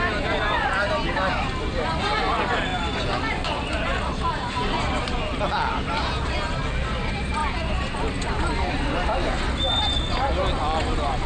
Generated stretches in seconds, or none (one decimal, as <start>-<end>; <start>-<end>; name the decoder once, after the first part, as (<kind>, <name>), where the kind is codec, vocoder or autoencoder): none